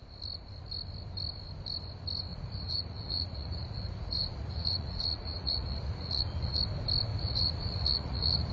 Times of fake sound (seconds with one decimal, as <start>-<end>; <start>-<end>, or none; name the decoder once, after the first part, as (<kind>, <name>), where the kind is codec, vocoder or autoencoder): 2.3-6.6 (vocoder, Vocos); 7.1-8.5